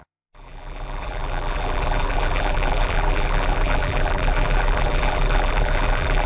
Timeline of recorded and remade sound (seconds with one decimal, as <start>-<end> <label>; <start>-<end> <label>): 0.0-6.3 remade